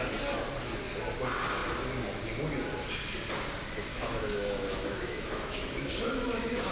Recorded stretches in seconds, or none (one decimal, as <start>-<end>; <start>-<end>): 0.0-3.9

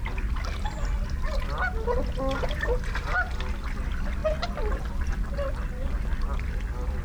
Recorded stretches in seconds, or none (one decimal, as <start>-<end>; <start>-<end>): 0.0-7.0